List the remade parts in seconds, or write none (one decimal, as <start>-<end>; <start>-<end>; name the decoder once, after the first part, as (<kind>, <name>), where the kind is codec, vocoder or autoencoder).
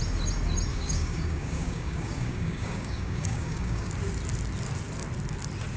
0.7-3.9 (codec, DAC)